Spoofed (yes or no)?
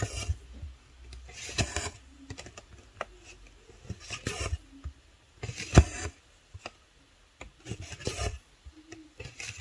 no